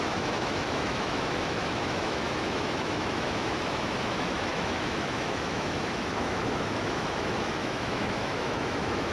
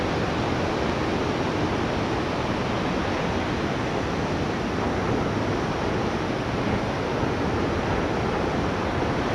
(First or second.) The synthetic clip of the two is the first